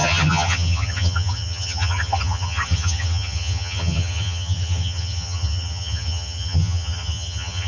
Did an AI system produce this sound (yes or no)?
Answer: yes